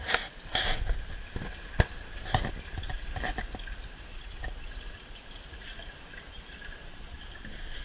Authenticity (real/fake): real